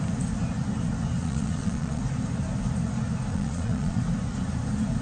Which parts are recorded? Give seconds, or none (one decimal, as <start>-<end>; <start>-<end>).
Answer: 0.0-1.2; 2.0-3.3; 4.0-5.0